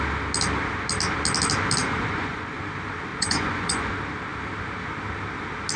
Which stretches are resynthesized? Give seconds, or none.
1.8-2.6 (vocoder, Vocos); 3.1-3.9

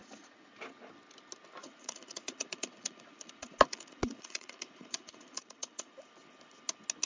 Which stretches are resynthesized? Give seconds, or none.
0.0-0.5 (vocoder, Vocos); 1.6-5.9

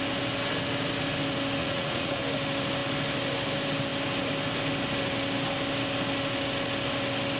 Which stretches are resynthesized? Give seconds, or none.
1.6-2.2 (vocoder, Vocos)

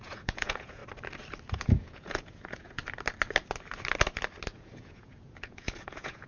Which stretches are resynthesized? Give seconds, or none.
0.0-0.8 (vocoder, Vocos); 1.5-2.8; 4.5-6.3